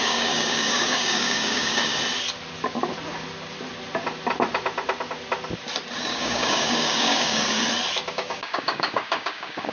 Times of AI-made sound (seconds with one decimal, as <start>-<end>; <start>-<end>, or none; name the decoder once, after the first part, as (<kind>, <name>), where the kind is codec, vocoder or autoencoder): 0.0-1.9 (codec, DAC); 6.1-7.4; 8.1-9.7